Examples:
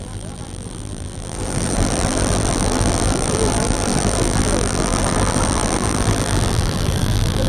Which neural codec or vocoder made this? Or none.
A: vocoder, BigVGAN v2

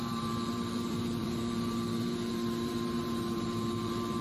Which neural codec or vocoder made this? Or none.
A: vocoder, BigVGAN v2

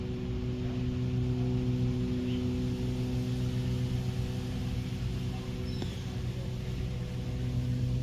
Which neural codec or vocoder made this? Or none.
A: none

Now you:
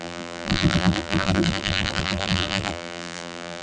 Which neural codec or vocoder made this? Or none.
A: vocoder, BigVGAN v2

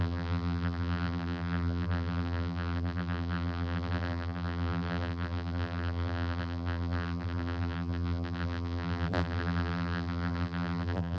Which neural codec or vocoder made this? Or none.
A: vocoder, BigVGAN v2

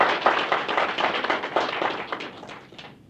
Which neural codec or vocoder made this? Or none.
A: none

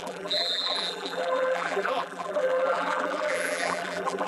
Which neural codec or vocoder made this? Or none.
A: vocoder, BigVGAN v2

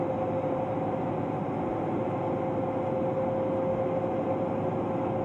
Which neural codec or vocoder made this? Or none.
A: none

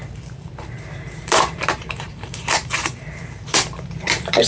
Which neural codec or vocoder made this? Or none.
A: vocoder, BigVGAN v2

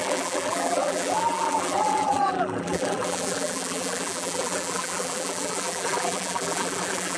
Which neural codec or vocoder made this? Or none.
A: vocoder, BigVGAN v2